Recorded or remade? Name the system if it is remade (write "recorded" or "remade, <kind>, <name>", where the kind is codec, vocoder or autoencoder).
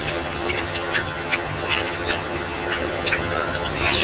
remade, vocoder, HiFi-GAN